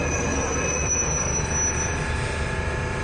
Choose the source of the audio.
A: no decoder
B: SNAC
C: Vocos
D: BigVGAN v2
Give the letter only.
A